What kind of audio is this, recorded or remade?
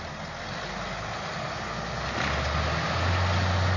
recorded